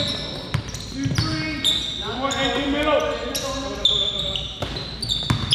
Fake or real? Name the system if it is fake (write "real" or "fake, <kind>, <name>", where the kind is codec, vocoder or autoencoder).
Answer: real